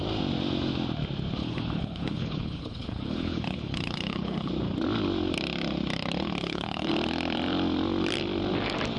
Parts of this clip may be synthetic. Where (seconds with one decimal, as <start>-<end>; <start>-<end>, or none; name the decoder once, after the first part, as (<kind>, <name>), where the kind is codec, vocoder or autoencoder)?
1.4-4.5 (codec, HILCodec); 6.4-6.9